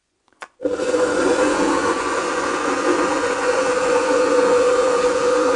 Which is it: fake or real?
fake